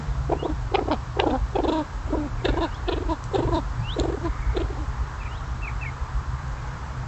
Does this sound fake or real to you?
fake